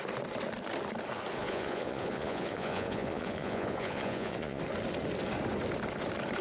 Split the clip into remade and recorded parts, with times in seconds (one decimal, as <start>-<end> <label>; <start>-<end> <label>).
0.0-1.4 recorded; 1.4-4.6 remade; 4.6-6.4 recorded